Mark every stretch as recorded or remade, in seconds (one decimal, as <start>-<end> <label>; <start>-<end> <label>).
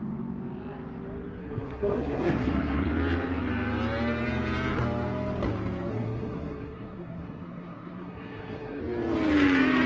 0.0-1.4 recorded; 1.4-2.9 remade; 2.9-5.9 recorded; 5.9-8.8 remade; 8.8-9.9 recorded